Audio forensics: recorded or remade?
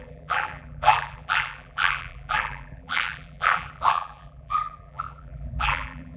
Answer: remade